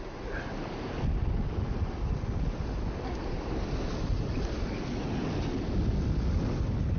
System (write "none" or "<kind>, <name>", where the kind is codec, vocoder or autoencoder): none